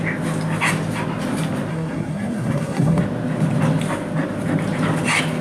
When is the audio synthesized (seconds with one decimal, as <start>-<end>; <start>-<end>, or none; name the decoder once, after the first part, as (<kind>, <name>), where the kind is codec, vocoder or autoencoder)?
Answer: 1.7-3.0 (codec, SNAC)